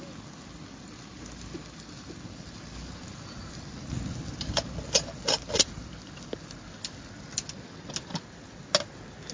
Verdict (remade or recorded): recorded